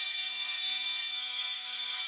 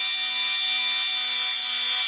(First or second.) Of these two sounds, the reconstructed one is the first